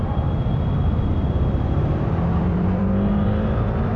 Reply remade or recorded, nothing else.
remade